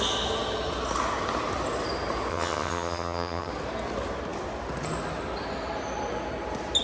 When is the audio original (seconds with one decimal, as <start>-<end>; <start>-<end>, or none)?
0.0-2.3; 3.5-6.8